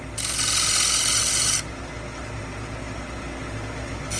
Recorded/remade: recorded